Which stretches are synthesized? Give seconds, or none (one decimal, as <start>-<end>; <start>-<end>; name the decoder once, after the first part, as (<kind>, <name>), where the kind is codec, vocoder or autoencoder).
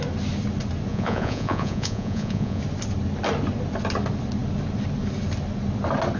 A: 0.9-2.6 (vocoder, Vocos)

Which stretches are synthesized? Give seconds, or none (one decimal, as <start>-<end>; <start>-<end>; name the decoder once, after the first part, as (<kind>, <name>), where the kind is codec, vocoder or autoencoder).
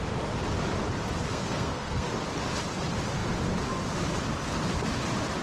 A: 1.2-2.1 (codec, SNAC)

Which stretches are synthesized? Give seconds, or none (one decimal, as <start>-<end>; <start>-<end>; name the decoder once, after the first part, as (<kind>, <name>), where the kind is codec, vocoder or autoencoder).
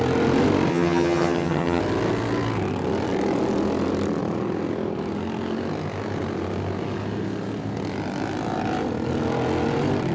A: 0.7-1.8 (vocoder, HiFi-GAN)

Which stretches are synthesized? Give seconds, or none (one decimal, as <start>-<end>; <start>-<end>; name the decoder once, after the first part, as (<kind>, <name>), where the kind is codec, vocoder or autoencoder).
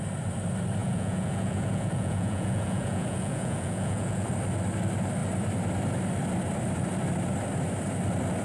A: 0.8-4.3 (vocoder, Vocos)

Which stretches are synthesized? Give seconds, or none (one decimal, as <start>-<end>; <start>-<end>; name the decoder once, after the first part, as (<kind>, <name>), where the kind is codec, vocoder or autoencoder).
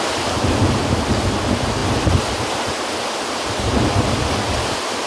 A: none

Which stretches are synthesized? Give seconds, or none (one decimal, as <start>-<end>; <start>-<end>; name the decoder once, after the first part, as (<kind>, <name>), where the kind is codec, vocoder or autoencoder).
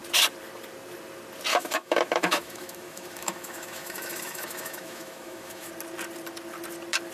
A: 1.5-5.7 (autoencoder, DAC-VAE)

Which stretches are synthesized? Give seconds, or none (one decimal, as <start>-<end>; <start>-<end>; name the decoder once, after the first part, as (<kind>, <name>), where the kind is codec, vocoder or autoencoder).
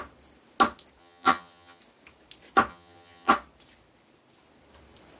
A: 1.0-1.8 (vocoder, HiFi-GAN); 2.7-3.3